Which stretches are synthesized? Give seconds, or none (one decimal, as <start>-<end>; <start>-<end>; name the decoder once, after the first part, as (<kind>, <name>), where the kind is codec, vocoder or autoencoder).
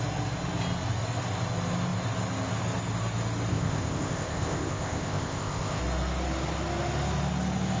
3.5-5.8 (codec, ZipCodec)